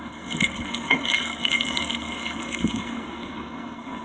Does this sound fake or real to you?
fake